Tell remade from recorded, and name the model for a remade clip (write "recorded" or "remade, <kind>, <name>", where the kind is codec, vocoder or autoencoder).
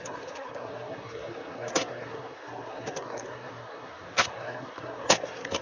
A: remade, codec, SNAC